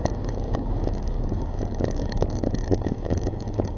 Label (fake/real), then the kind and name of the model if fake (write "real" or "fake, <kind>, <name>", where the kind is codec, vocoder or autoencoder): fake, codec, DAC